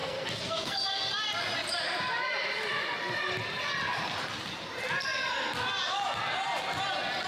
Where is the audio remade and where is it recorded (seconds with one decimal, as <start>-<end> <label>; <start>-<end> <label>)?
0.0-1.1 remade; 1.1-7.3 recorded